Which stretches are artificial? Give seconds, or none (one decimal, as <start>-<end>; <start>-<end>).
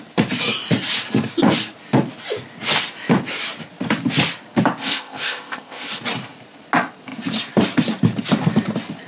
4.8-6.0